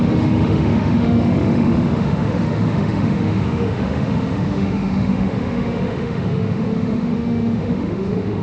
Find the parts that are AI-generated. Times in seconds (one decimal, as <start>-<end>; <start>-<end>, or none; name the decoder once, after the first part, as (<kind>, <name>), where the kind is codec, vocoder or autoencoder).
0.0-8.4 (autoencoder, DAC-VAE)